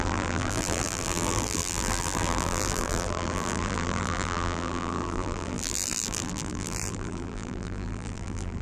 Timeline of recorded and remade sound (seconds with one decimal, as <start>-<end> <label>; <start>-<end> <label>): 0.0-8.6 remade